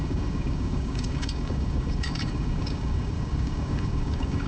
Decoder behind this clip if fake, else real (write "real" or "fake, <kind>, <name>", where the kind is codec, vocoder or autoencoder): fake, codec, DAC